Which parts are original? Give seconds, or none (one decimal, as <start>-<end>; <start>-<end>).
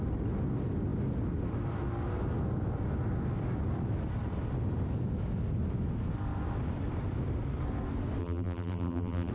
0.0-8.2